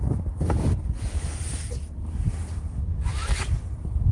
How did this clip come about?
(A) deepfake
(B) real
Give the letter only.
B